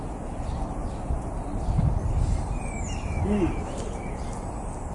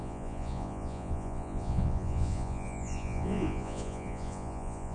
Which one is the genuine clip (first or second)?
first